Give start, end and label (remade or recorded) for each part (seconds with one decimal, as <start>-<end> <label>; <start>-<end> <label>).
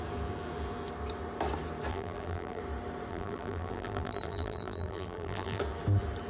0.0-1.9 recorded; 1.9-2.6 remade; 2.6-3.1 recorded; 3.1-5.6 remade; 5.6-6.3 recorded